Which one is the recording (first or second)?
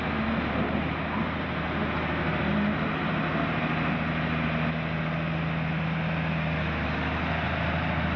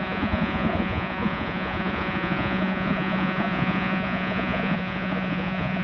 first